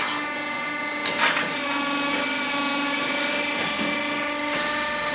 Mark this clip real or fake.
real